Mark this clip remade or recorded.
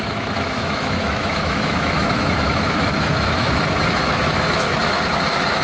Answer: remade